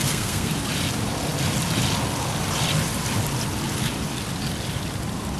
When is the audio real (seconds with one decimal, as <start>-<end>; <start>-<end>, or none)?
0.5-5.4

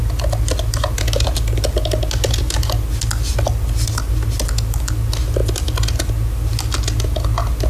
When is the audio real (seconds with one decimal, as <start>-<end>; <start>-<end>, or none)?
0.0-7.7

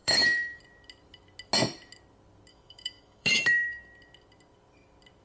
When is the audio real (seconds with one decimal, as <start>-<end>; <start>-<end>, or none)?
0.6-2.5; 3.8-5.2

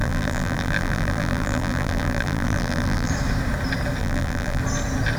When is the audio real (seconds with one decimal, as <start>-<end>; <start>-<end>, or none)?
3.1-4.0; 4.6-5.2